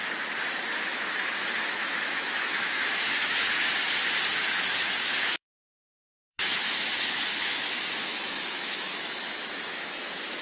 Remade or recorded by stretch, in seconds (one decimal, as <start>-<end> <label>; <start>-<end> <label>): 0.0-0.8 recorded; 0.8-3.4 remade; 3.4-4.3 recorded; 4.3-10.4 remade